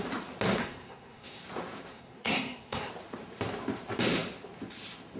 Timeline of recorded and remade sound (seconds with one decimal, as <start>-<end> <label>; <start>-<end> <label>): 0.0-0.6 recorded; 0.6-1.4 remade; 1.4-1.9 recorded; 1.9-2.9 remade; 2.9-5.2 recorded